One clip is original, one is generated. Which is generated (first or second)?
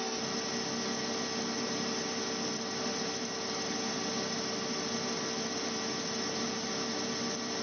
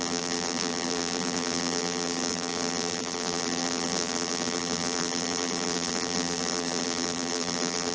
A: second